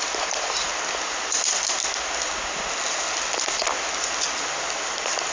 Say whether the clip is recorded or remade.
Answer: recorded